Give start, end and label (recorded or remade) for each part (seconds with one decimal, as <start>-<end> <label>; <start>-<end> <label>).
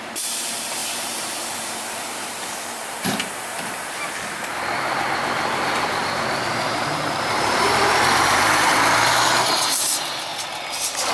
0.0-6.0 remade; 6.0-6.5 recorded; 6.5-10.3 remade; 10.3-11.1 recorded